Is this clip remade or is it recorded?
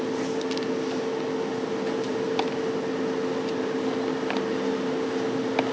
recorded